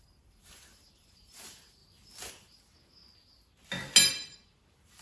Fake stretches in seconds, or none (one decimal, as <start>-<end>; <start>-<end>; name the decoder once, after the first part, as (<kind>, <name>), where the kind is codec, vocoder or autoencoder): 0.0-1.8 (vocoder, BigVGAN v2); 2.3-3.0; 4.1-5.0